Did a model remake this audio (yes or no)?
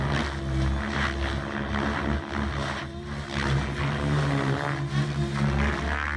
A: no